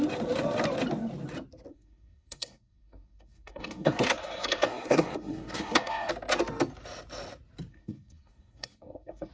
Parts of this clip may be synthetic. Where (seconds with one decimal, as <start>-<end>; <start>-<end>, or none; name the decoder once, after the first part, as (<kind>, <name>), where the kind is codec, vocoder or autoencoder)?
1.7-6.1 (codec, SNAC); 7.7-9.3